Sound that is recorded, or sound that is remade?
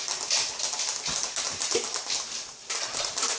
recorded